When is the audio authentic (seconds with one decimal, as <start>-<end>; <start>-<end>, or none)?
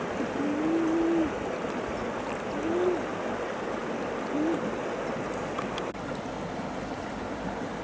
0.0-7.8